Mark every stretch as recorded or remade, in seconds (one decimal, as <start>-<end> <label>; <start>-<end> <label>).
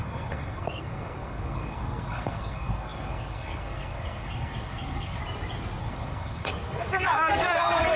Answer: 0.0-5.2 remade; 5.2-5.8 recorded; 5.8-8.0 remade